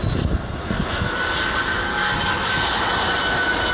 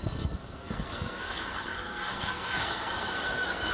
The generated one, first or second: second